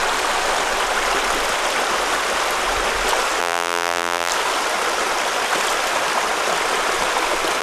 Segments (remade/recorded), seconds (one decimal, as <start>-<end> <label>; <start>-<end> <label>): 0.0-3.4 recorded; 3.4-4.3 remade; 4.3-7.6 recorded